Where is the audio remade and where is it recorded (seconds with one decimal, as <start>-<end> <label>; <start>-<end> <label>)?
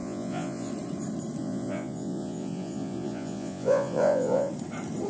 0.0-0.7 remade; 0.7-1.4 recorded; 1.4-4.5 remade; 4.5-5.1 recorded